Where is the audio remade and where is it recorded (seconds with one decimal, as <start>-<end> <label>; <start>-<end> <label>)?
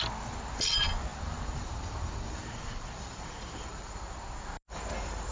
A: 0.0-1.1 recorded; 1.1-4.0 remade; 4.0-5.3 recorded